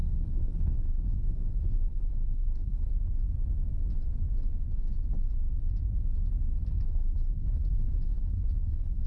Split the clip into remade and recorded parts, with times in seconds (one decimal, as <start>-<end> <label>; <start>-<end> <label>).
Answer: 0.0-2.9 remade; 2.9-6.7 recorded; 6.7-9.1 remade